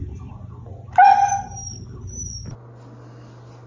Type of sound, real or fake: real